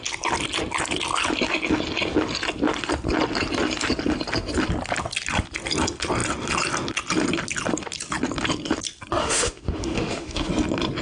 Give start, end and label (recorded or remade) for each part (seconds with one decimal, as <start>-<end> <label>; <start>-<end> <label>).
0.0-9.2 recorded; 9.2-10.5 remade; 10.5-11.0 recorded